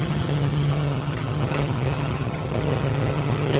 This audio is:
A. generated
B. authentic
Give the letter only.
A